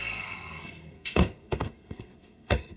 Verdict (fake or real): fake